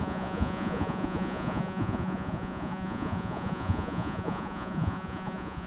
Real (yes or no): no